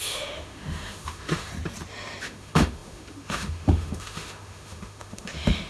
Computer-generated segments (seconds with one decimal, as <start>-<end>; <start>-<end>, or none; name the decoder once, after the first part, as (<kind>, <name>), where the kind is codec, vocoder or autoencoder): 0.0-1.5 (autoencoder, DAC-VAE); 2.2-5.7